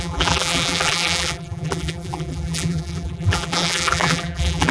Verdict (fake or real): fake